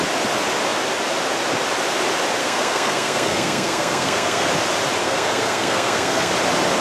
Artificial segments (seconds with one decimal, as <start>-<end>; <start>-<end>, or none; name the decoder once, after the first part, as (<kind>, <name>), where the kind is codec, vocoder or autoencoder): 2.4-4.5 (codec, SNAC); 5.0-6.3